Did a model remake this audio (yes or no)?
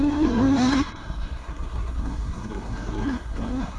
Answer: yes